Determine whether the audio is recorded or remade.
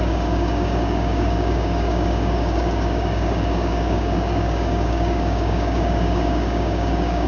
remade